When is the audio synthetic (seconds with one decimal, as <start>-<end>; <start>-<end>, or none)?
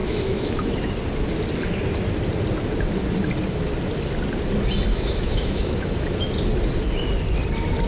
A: 0.0-0.9; 4.9-6.3